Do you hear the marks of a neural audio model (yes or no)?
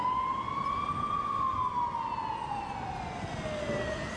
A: no